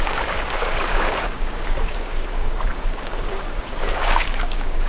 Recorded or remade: remade